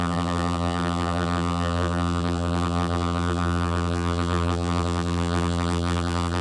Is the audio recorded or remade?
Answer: remade